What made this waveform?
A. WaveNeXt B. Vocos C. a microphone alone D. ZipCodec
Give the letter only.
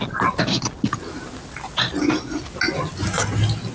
C